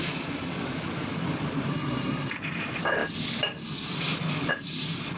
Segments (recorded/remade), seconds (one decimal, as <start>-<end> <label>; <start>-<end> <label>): 0.0-1.7 recorded; 1.7-2.3 remade; 2.3-5.2 recorded